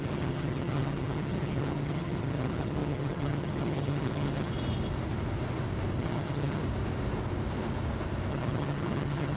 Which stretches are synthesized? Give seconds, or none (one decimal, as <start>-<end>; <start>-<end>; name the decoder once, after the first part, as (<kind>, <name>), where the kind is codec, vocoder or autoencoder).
0.0-4.5 (vocoder, HiFi-GAN); 6.0-6.6; 8.3-9.4